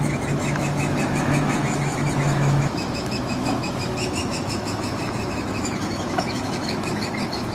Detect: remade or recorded remade